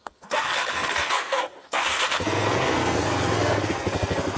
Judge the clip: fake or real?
fake